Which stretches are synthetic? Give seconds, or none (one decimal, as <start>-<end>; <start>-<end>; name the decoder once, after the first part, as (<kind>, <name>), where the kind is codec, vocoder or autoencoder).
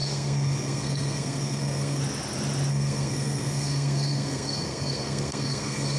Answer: 0.0-2.0 (codec, SNAC); 2.7-6.0